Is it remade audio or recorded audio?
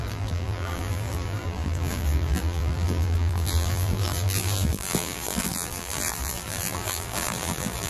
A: remade